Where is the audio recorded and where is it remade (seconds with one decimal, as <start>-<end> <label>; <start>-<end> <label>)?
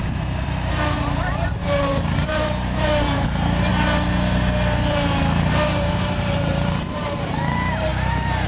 0.0-3.7 remade; 3.7-5.5 recorded; 5.5-7.9 remade; 7.9-8.5 recorded